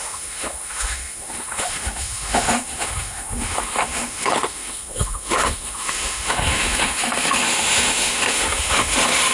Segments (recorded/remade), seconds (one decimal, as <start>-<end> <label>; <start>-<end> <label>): 0.0-9.3 remade